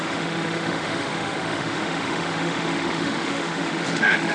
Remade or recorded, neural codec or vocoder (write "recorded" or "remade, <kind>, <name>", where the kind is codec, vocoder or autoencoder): remade, autoencoder, DAC-VAE